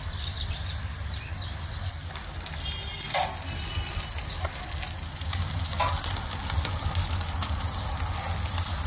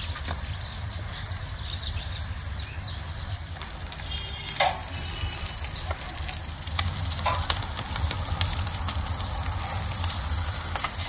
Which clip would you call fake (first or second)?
second